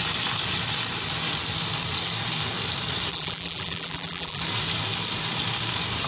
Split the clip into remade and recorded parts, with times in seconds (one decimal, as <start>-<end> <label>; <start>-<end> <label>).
0.0-3.1 recorded; 3.1-4.4 remade; 4.4-6.1 recorded